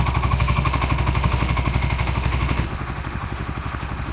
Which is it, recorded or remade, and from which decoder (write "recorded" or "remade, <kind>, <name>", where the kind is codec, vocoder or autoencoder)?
remade, autoencoder, DAC-VAE